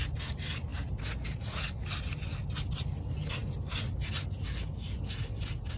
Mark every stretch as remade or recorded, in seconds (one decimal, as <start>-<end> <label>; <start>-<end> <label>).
0.0-5.8 recorded